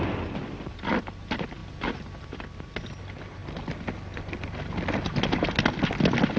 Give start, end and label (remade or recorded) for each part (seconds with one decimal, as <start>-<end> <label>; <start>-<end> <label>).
0.0-1.6 remade; 1.6-3.0 recorded; 3.0-3.4 remade; 3.4-6.4 recorded

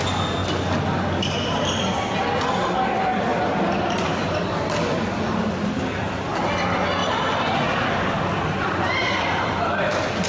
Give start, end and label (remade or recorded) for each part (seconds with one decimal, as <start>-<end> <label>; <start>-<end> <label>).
0.0-7.0 recorded; 7.0-9.2 remade; 9.2-10.3 recorded

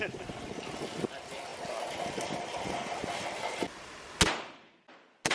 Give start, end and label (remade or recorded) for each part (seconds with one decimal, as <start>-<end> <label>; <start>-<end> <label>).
0.0-5.3 recorded

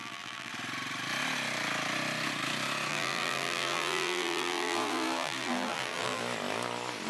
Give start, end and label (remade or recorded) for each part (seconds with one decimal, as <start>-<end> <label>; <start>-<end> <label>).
0.0-0.5 remade; 0.5-2.9 recorded; 2.9-6.2 remade; 6.2-7.1 recorded

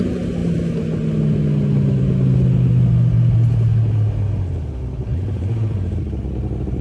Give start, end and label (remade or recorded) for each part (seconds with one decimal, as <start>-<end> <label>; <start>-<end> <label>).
0.0-5.1 recorded; 5.1-6.0 remade; 6.0-6.8 recorded

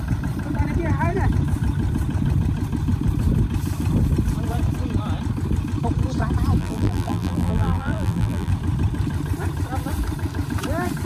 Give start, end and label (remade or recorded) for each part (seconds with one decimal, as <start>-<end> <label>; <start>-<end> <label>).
0.0-6.6 recorded; 6.6-8.5 remade; 8.5-11.1 recorded

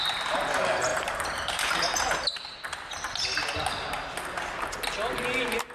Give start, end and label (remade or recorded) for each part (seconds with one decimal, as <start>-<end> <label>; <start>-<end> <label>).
0.0-0.9 recorded; 0.9-2.6 remade; 2.6-5.7 recorded